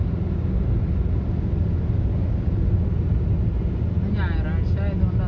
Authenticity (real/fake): real